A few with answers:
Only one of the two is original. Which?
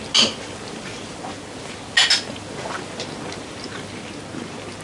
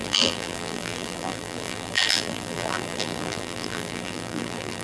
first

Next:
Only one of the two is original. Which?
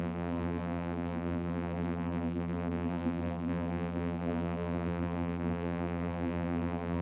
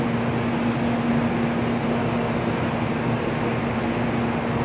second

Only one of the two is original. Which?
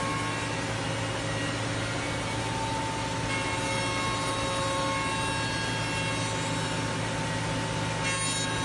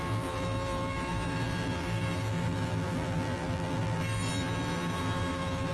first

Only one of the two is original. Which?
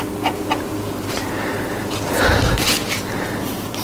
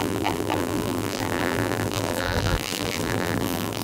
first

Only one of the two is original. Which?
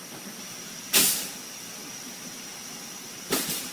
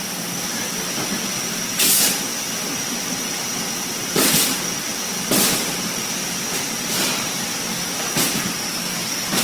second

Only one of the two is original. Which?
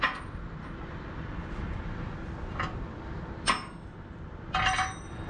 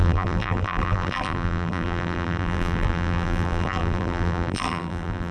first